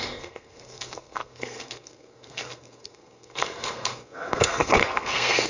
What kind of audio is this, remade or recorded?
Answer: remade